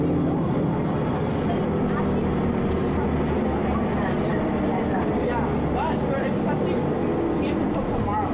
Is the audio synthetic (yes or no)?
no